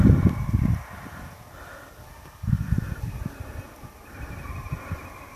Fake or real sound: real